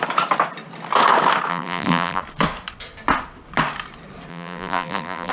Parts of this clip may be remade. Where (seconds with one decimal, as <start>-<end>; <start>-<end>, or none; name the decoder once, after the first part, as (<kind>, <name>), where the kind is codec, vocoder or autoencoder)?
1.5-2.2 (vocoder, BigVGAN v2); 4.3-5.3